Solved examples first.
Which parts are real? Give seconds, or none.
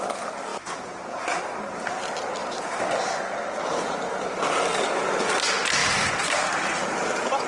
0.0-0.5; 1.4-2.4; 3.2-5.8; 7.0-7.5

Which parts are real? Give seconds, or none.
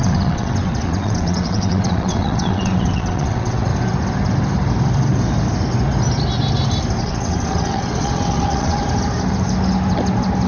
3.7-7.0; 8.8-10.5